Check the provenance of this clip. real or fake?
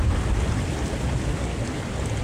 fake